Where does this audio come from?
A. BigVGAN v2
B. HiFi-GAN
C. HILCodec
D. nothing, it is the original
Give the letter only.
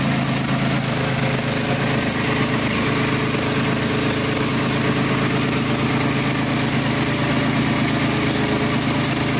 D